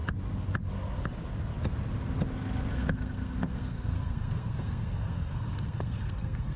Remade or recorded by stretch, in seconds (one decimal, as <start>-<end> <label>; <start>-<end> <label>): 0.0-2.7 recorded; 2.7-6.6 remade